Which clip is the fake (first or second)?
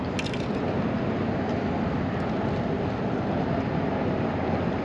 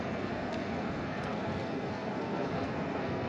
second